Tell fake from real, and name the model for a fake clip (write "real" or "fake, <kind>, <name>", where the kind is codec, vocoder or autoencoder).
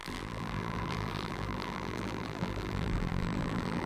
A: fake, vocoder, BigVGAN v2